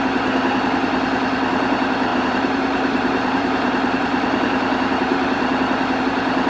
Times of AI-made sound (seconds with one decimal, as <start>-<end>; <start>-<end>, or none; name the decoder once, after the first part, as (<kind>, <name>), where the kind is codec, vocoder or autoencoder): 2.1-6.0 (vocoder, BigVGAN v2)